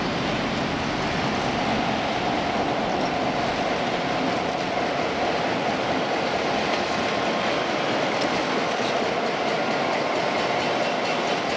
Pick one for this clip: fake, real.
real